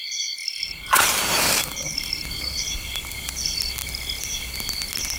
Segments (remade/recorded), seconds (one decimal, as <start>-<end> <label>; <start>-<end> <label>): 0.0-0.4 recorded; 0.4-3.3 remade; 3.3-5.2 recorded